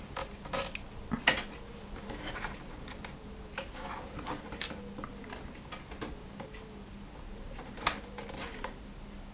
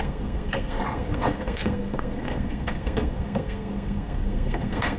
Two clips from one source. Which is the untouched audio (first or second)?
first